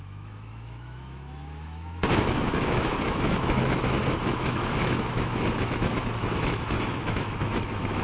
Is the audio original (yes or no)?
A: no